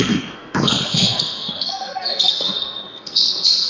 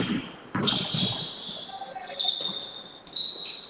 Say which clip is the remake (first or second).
first